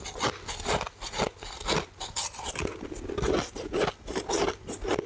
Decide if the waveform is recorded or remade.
recorded